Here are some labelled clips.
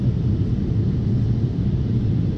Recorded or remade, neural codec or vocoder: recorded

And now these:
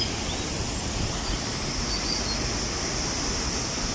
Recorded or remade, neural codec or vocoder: recorded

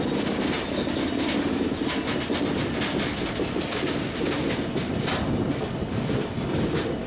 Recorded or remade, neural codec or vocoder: recorded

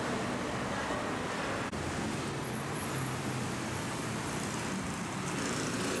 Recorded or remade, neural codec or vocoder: recorded